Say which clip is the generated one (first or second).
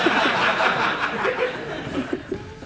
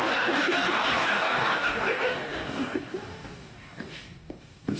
second